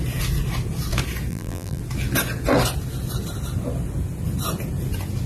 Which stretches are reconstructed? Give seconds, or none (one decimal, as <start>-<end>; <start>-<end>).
1.3-1.8